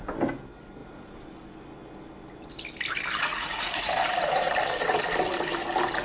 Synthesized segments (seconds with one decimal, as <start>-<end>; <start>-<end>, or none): 3.2-4.5